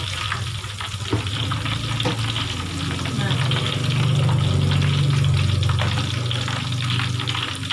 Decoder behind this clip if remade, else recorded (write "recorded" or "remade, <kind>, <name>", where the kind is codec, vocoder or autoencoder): recorded